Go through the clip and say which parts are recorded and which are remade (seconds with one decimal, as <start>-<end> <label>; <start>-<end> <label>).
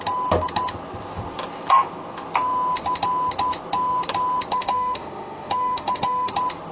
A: 0.0-4.5 recorded; 4.5-6.3 remade; 6.3-6.7 recorded